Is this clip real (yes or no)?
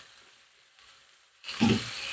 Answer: yes